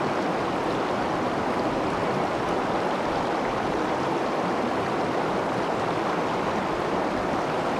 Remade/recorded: recorded